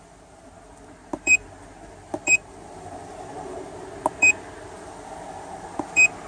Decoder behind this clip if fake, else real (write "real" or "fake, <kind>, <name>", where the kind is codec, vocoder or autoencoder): fake, vocoder, BigVGAN v2